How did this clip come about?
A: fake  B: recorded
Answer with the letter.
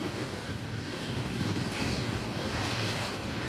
A